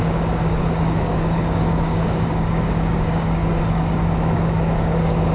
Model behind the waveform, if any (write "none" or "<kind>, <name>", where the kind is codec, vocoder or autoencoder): codec, DAC